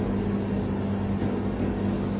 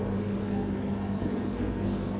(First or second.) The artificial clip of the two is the second